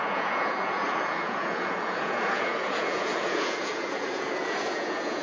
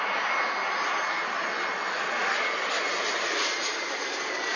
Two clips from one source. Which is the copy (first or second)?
first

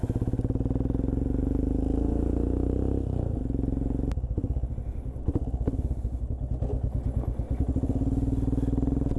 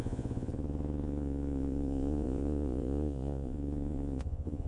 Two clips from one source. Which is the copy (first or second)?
second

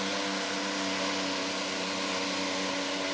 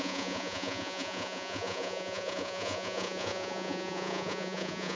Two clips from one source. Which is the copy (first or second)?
second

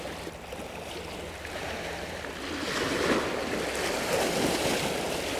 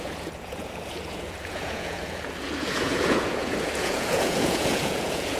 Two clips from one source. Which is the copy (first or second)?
second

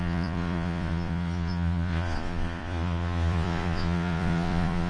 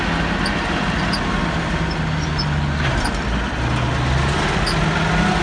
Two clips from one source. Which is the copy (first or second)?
first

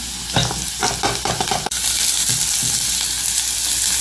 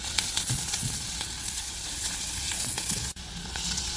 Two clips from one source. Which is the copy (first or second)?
second